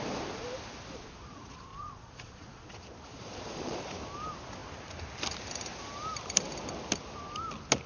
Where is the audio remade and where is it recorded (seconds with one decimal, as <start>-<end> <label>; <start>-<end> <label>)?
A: 0.0-1.7 recorded; 1.7-2.7 remade; 2.7-3.1 recorded; 3.1-3.8 remade; 3.8-7.9 recorded